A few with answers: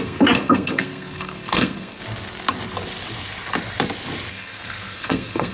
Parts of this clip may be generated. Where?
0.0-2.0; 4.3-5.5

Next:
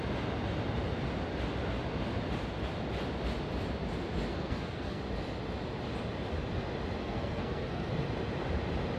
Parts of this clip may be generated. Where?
4.3-5.0; 7.0-7.9

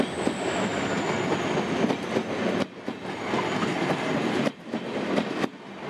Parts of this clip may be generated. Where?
none

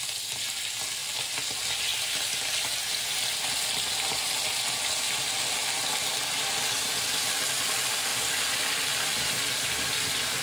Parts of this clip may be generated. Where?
none

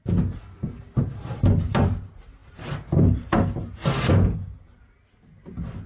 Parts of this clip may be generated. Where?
none

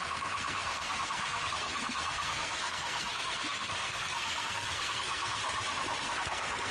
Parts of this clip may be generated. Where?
0.0-5.4; 6.0-6.7

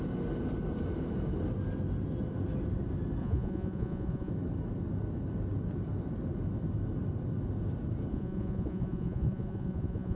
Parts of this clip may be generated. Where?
3.2-4.3; 8.1-10.2